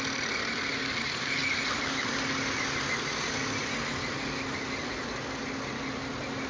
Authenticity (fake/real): real